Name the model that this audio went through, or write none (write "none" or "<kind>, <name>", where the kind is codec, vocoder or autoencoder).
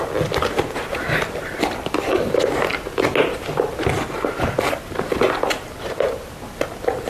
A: none